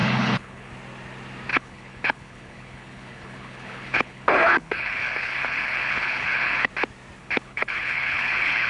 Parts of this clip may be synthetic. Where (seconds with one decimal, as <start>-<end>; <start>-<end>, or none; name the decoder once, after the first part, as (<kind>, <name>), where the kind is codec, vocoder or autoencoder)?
0.0-0.7 (codec, HILCodec); 1.5-6.7; 7.2-8.7